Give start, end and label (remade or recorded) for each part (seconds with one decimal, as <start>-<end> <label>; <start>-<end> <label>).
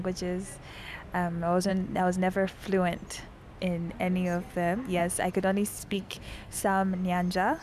0.0-5.8 recorded; 5.8-6.6 remade; 6.6-7.6 recorded